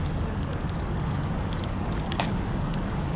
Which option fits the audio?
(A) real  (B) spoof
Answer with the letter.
B